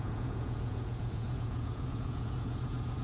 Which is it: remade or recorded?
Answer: remade